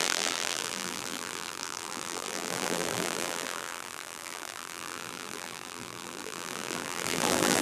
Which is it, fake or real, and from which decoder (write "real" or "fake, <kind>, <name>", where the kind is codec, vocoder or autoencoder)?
fake, vocoder, BigVGAN v2